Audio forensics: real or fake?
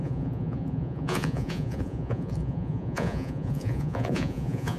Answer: fake